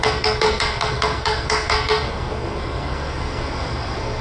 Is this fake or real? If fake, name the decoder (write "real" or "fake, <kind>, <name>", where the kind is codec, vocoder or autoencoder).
fake, codec, SNAC